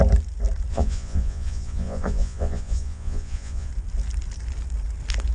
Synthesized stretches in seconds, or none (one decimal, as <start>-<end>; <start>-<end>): 0.7-3.7